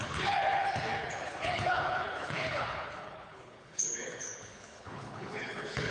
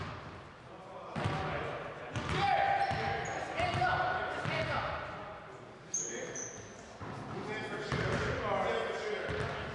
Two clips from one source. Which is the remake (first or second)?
first